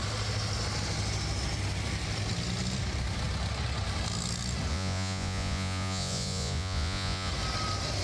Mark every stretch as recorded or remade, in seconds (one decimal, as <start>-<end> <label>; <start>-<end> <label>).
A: 0.0-4.7 recorded; 4.7-7.3 remade; 7.3-8.0 recorded